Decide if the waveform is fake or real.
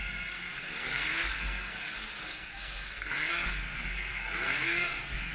fake